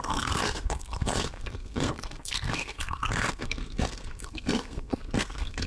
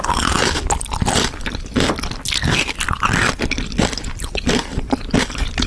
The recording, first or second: second